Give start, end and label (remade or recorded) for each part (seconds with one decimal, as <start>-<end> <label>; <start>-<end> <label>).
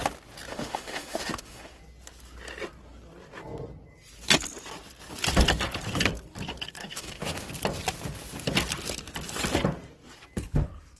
0.0-0.5 recorded; 0.5-1.8 remade; 1.8-6.8 recorded; 6.8-7.5 remade; 7.5-11.0 recorded